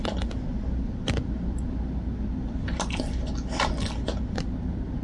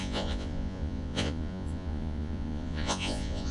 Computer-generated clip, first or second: second